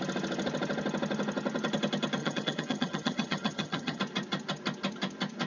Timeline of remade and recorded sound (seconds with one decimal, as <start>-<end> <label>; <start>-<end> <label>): 0.0-2.2 recorded; 2.2-4.0 remade; 4.0-5.5 recorded